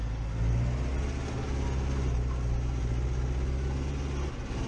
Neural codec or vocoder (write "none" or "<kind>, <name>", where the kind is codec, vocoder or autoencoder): none